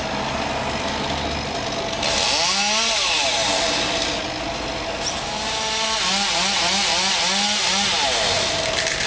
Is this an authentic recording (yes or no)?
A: yes